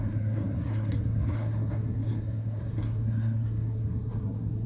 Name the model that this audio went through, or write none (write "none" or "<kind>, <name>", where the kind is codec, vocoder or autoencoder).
codec, SNAC